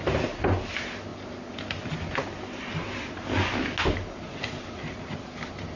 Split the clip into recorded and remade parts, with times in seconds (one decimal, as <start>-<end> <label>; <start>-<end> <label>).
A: 0.0-5.8 recorded

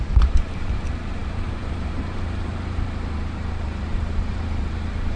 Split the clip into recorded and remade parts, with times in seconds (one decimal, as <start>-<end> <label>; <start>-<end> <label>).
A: 0.0-5.2 remade

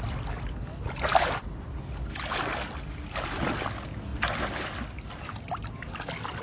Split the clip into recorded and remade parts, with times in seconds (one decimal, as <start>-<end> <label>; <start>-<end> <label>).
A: 0.0-6.4 recorded

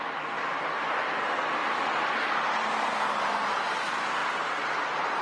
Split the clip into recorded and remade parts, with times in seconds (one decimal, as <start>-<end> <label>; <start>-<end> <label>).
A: 0.0-5.2 recorded

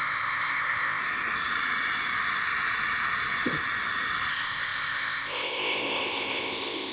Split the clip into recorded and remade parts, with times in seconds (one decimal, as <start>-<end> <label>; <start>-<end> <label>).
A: 0.0-1.0 remade; 1.0-4.3 recorded; 4.3-6.9 remade